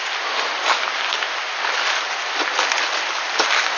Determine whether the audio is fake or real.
real